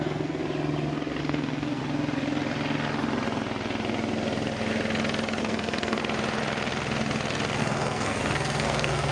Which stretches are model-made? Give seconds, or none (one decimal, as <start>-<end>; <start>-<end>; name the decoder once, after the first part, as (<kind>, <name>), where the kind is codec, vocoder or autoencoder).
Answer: 0.0-0.4 (codec, SNAC); 1.2-1.8; 5.4-6.0; 7.6-9.1